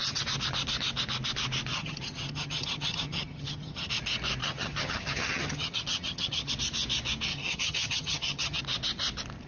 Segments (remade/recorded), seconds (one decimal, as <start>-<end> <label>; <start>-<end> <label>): 0.0-1.7 recorded; 1.7-3.9 remade; 3.9-4.4 recorded; 4.4-6.5 remade; 6.5-7.3 recorded; 7.3-8.6 remade; 8.6-9.5 recorded